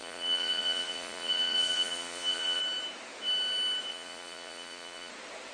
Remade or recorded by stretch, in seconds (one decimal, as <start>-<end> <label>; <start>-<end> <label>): 0.0-2.6 remade; 2.6-3.9 recorded; 3.9-5.1 remade; 5.1-5.5 recorded